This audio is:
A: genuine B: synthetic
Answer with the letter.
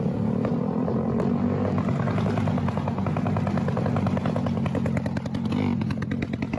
A